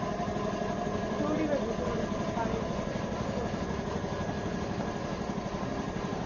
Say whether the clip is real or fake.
real